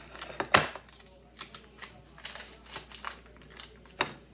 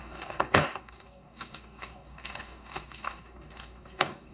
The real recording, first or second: first